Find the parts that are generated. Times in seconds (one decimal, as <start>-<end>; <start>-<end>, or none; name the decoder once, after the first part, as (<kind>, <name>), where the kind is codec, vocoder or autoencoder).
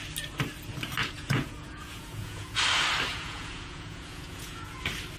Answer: 1.0-2.6 (vocoder, Vocos); 3.1-4.8